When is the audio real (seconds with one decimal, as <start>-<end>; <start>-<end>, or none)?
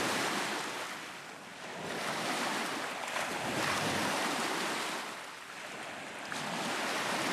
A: 0.0-7.3